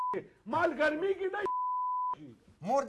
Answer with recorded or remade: recorded